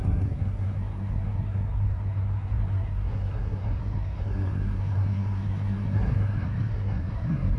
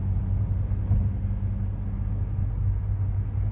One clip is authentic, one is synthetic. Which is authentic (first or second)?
second